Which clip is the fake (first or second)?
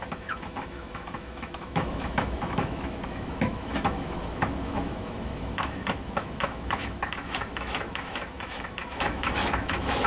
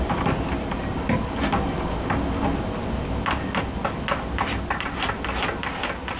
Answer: first